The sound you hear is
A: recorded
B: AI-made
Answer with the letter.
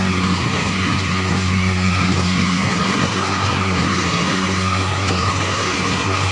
B